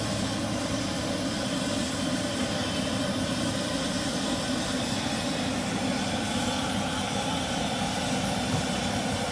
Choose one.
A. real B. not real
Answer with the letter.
B